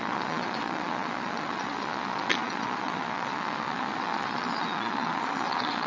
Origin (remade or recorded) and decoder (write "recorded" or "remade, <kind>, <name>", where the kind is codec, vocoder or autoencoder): remade, vocoder, Vocos